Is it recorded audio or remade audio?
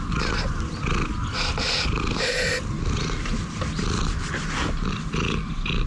recorded